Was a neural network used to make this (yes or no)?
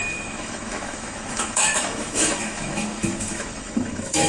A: yes